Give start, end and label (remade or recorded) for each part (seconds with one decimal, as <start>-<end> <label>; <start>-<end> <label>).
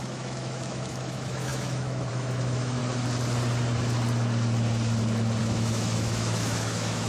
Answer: 0.0-2.8 remade; 2.8-5.4 recorded; 5.4-7.1 remade